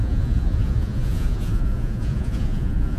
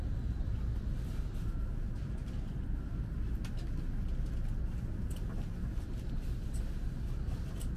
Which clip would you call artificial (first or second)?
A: first